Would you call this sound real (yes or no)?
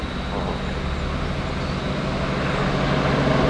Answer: yes